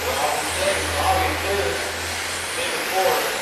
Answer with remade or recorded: recorded